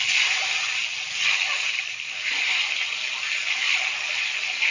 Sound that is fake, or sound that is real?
real